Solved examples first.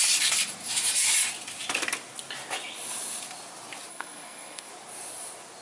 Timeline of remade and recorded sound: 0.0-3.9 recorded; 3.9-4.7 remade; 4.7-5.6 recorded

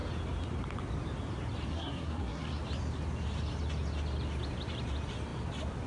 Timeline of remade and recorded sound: 0.0-1.7 recorded; 1.7-2.6 remade; 2.6-5.9 recorded

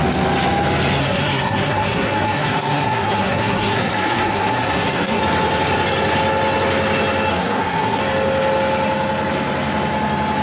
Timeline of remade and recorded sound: 0.0-1.0 recorded; 1.0-5.2 remade; 5.2-7.3 recorded; 7.3-8.0 remade; 8.0-10.4 recorded

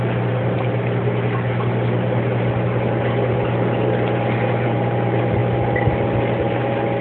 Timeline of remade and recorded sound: 0.0-7.0 recorded

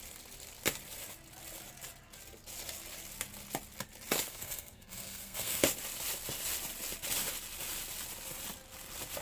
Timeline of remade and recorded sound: 0.0-4.3 recorded; 4.3-5.6 remade; 5.6-9.2 recorded

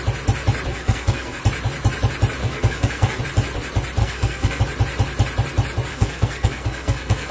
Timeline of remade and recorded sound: 0.0-0.7 recorded; 0.7-1.4 remade; 1.4-2.4 recorded; 2.4-3.2 remade; 3.2-4.0 recorded; 4.0-4.6 remade; 4.6-5.9 recorded; 5.9-7.3 remade

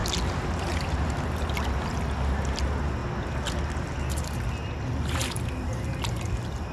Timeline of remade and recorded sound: 0.0-6.7 recorded